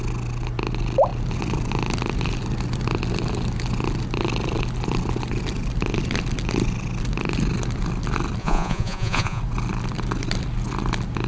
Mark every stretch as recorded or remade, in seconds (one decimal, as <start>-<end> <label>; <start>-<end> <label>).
0.0-8.4 recorded; 8.4-9.4 remade; 9.4-11.3 recorded